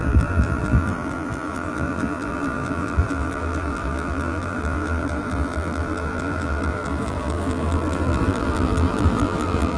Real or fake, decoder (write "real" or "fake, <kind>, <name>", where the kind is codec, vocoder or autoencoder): fake, vocoder, BigVGAN v2